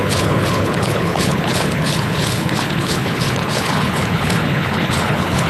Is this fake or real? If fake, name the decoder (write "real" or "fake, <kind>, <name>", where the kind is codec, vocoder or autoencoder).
fake, codec, HILCodec